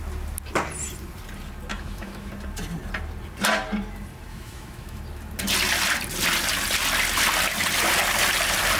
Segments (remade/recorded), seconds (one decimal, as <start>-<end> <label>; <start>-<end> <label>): 0.0-1.7 recorded; 1.7-2.3 remade; 2.3-4.3 recorded; 4.3-5.0 remade; 5.0-8.8 recorded